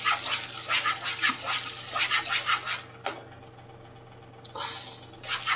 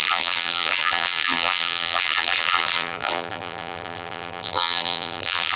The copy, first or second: second